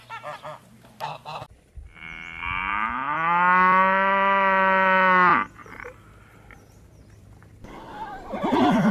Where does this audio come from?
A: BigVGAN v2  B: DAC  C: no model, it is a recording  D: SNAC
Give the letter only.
C